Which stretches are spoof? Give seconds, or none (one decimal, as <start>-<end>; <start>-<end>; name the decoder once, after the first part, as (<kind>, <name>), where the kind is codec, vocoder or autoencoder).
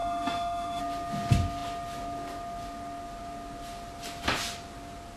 0.0-0.8 (autoencoder, DAC-VAE)